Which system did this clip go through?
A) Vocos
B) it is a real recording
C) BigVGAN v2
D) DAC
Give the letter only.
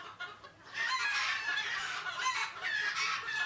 B